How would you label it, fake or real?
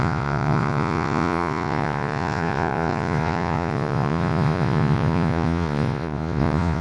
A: fake